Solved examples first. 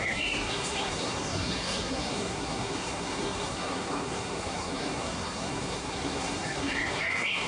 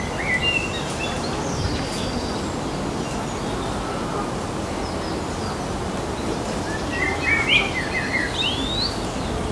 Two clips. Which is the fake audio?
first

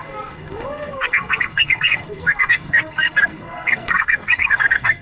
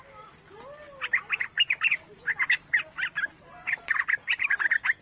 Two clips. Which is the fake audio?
first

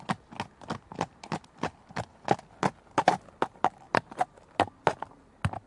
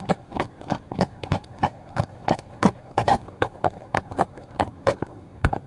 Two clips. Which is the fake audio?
second